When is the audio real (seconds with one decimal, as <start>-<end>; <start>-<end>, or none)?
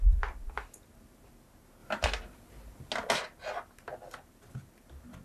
0.0-5.2